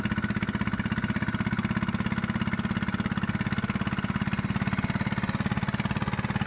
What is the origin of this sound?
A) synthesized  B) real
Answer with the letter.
B